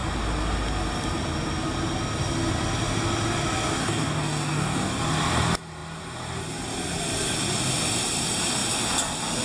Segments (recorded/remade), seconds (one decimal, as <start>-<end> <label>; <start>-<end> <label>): 0.0-3.8 recorded; 3.8-4.9 remade; 4.9-9.4 recorded